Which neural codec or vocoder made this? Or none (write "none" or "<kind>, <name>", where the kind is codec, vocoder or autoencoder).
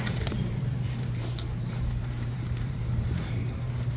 vocoder, BigVGAN v2